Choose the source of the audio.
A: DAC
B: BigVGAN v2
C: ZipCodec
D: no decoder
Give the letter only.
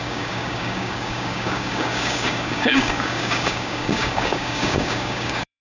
A